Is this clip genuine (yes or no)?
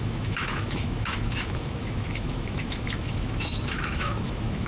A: no